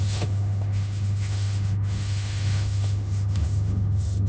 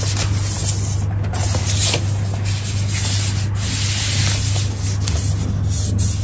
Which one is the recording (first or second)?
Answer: second